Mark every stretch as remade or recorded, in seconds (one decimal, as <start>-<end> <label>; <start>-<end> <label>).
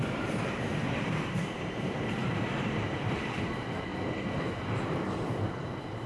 0.0-3.9 remade; 3.9-4.5 recorded; 4.5-6.1 remade